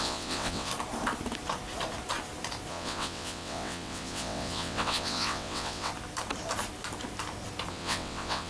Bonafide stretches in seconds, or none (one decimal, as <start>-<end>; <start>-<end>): 0.7-2.7; 5.9-7.7